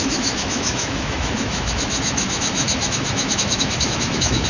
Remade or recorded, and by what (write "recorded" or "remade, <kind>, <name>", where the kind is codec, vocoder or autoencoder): remade, autoencoder, DAC-VAE